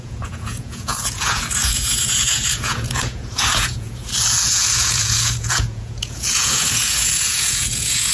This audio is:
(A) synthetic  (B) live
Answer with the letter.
A